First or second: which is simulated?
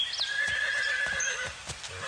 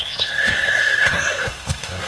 second